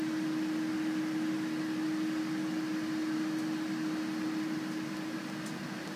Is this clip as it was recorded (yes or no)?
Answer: yes